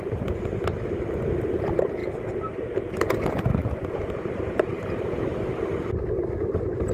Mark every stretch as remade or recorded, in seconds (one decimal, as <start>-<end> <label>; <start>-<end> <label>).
0.0-3.6 recorded; 3.6-5.5 remade; 5.5-6.9 recorded